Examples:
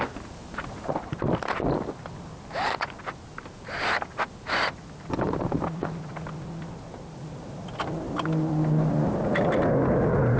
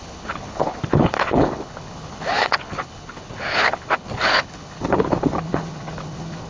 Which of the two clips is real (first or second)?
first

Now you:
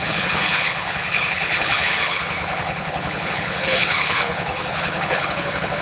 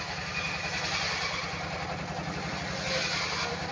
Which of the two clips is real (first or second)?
second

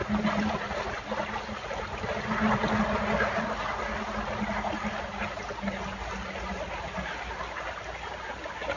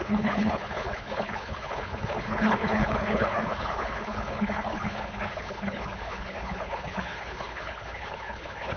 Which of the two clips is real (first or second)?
first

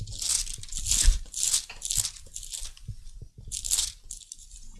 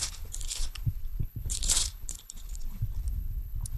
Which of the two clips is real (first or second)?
first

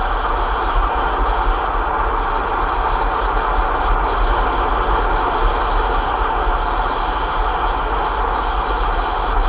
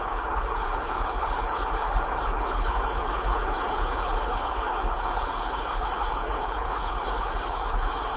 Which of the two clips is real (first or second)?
first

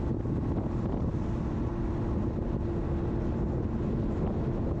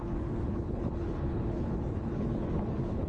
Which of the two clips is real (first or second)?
first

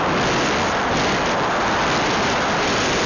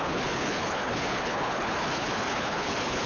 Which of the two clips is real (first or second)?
first